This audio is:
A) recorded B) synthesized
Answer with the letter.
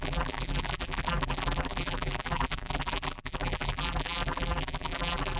B